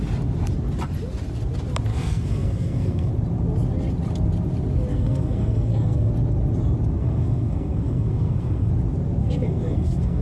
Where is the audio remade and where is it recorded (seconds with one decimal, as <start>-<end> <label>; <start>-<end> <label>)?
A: 0.0-1.9 recorded; 1.9-3.1 remade; 3.1-4.9 recorded; 4.9-6.1 remade; 6.1-7.0 recorded; 7.0-8.7 remade; 8.7-9.2 recorded; 9.2-10.2 remade